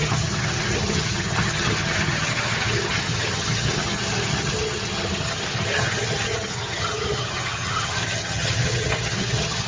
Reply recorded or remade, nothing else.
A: remade